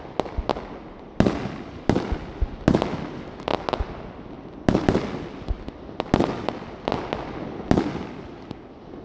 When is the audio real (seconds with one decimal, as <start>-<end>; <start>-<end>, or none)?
0.0-9.0